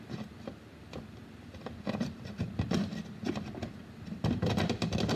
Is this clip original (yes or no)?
yes